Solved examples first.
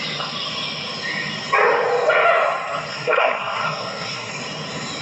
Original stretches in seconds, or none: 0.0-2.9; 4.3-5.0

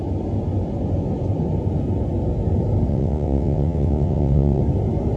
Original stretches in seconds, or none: 0.0-2.9; 4.6-5.2

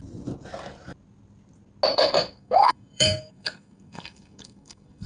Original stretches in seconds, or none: 0.0-1.9

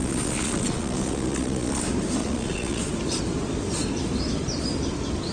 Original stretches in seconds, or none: 1.8-2.2; 2.8-5.3